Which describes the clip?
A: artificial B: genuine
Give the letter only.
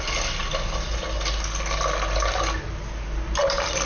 B